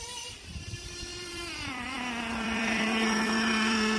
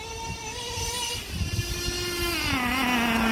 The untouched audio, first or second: second